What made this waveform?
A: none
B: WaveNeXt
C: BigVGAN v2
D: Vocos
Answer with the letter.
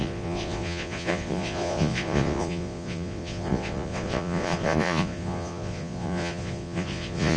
D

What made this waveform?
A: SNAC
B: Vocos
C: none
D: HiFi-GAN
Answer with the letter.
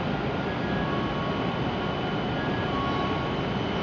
C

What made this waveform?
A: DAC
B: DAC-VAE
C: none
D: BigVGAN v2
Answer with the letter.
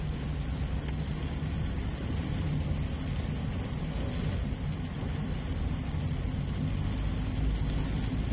C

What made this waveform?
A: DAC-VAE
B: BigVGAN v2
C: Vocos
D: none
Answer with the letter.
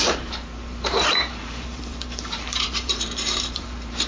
B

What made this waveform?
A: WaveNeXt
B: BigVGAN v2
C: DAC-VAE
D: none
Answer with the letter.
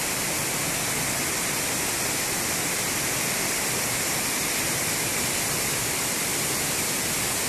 B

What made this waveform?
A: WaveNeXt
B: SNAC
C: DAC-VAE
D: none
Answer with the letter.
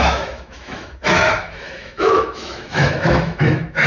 C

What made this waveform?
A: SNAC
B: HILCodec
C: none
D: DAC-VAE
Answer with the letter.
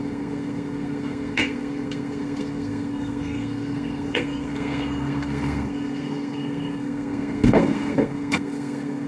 A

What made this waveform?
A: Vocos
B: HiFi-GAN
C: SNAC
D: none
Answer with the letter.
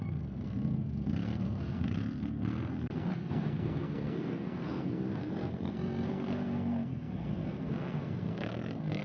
C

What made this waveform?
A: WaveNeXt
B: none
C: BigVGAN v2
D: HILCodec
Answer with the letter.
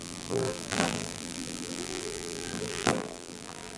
C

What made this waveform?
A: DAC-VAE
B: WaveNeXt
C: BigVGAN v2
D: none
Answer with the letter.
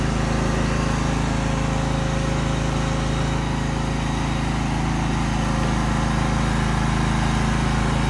D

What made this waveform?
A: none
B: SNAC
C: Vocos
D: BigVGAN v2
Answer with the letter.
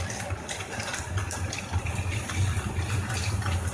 A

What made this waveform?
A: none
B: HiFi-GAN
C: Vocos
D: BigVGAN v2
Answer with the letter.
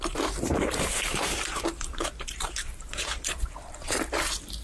D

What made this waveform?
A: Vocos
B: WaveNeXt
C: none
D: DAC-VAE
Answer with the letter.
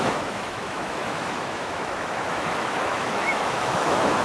D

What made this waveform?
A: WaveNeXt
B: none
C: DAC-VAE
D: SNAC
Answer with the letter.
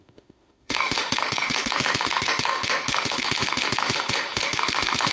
C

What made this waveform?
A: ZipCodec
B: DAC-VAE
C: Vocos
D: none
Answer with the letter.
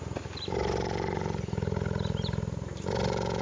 D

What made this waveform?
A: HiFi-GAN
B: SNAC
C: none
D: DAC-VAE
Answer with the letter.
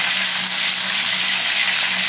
C